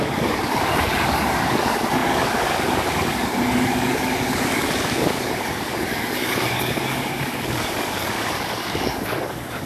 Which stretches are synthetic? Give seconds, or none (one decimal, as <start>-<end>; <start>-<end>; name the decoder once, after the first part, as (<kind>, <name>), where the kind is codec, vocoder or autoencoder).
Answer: 0.0-9.7 (codec, DAC)